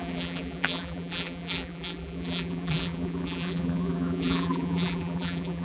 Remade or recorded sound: remade